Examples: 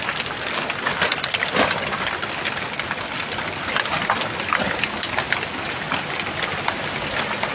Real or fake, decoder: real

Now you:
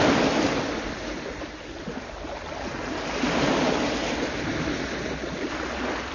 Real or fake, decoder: real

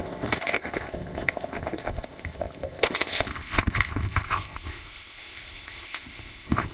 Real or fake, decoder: fake, codec, ZipCodec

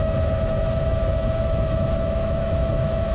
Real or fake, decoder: fake, autoencoder, DAC-VAE